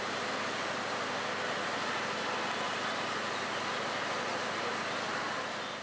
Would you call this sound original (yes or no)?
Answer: yes